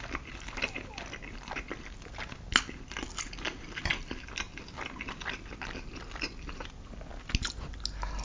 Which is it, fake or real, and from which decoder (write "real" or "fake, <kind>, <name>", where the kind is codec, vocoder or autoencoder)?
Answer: real